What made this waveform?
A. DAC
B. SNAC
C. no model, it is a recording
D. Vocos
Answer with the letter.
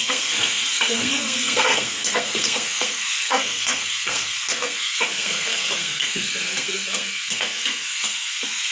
B